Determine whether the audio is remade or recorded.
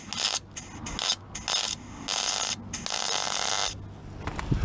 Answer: recorded